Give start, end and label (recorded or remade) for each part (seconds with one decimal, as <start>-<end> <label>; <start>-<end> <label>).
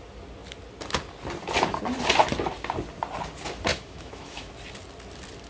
0.0-3.7 recorded; 3.7-4.5 remade; 4.5-5.5 recorded